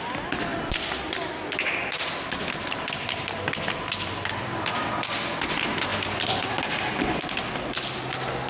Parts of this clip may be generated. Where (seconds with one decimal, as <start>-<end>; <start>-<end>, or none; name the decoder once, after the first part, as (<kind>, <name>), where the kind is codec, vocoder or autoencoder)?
0.5-4.9 (vocoder, BigVGAN v2); 5.9-6.5